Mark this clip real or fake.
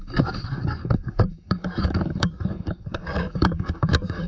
fake